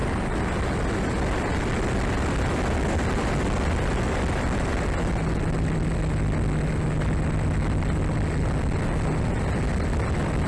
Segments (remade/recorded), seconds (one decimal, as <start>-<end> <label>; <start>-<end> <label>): 0.0-10.5 recorded